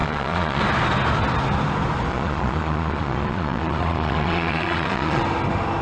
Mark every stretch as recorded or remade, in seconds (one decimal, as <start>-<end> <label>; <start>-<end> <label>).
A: 0.0-0.6 remade; 0.6-2.1 recorded; 2.1-5.2 remade; 5.2-5.8 recorded